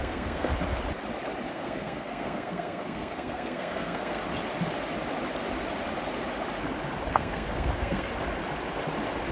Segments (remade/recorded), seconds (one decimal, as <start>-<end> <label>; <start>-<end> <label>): 0.0-0.5 remade; 0.5-1.5 recorded; 1.5-4.2 remade; 4.2-7.1 recorded; 7.1-8.1 remade; 8.1-9.3 recorded